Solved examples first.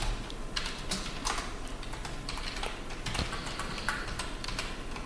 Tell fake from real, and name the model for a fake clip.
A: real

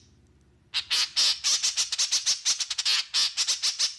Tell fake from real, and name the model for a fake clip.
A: real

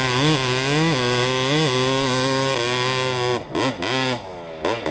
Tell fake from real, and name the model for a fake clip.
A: real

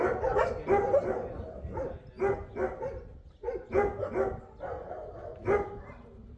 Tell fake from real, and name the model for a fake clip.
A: real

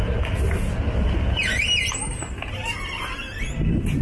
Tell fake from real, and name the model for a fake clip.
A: real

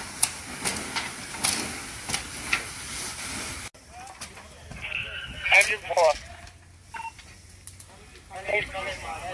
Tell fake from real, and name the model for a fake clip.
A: real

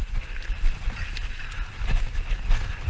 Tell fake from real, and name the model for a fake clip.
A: real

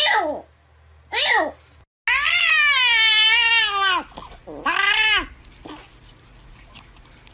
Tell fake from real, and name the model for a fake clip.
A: real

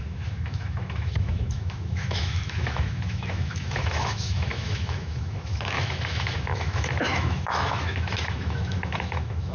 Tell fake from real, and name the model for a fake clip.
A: fake, autoencoder, DAC-VAE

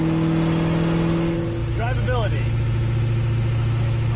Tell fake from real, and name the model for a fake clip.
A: real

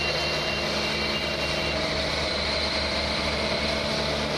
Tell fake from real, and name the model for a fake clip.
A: real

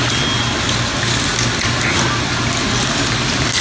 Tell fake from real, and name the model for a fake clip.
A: real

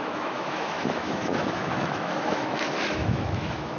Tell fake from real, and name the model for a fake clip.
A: fake, autoencoder, DAC-VAE